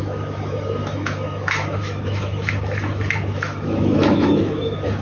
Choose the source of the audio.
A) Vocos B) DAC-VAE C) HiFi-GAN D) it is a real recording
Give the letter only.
B